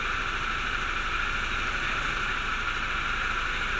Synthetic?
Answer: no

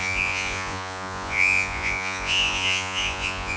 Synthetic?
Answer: yes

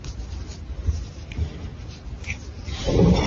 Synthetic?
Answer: no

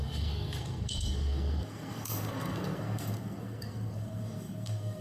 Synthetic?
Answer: yes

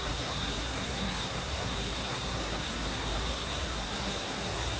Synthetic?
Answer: yes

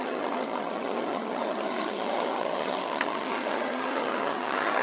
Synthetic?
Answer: yes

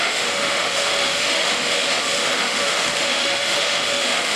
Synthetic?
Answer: yes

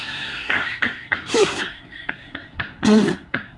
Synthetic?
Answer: yes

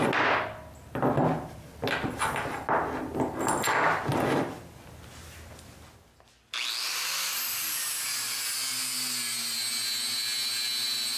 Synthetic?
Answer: no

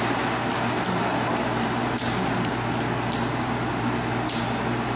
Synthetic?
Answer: no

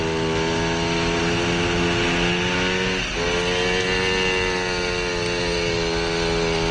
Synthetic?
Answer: no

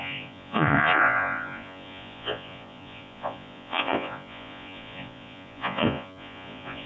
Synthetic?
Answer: yes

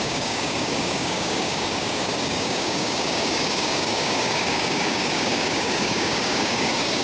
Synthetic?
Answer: yes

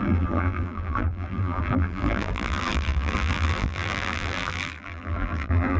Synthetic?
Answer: yes